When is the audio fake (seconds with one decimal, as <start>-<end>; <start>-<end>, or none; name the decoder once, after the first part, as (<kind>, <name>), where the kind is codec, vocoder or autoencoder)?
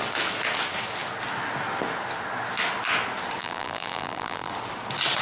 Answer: 3.4-4.5 (vocoder, BigVGAN v2)